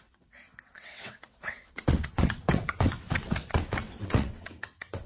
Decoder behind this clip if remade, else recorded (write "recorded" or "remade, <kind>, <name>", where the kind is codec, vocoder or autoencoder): remade, vocoder, WaveNeXt